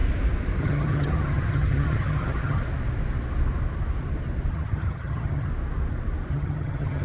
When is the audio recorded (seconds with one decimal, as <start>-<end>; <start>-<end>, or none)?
0.0-0.6; 2.6-4.5; 5.5-6.3